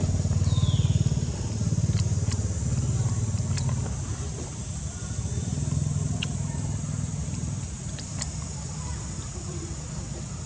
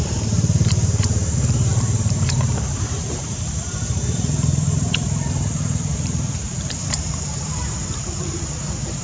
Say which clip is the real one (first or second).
first